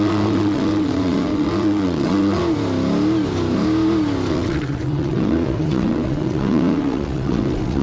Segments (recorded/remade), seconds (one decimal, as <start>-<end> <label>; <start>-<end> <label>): 0.0-2.4 remade; 2.4-4.3 recorded; 4.3-7.8 remade